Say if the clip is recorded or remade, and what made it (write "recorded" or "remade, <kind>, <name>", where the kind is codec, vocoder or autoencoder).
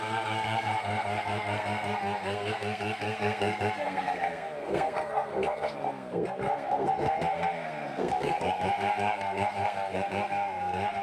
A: remade, codec, SNAC